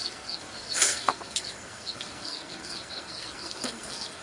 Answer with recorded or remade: remade